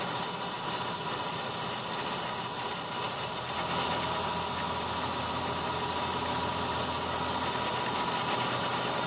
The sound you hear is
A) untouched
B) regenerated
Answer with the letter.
A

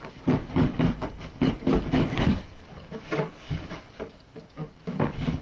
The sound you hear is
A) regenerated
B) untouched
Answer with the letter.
A